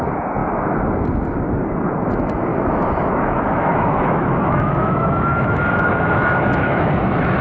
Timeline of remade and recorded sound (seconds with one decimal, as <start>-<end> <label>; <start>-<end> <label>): 0.0-2.5 recorded; 2.5-6.9 remade; 6.9-7.4 recorded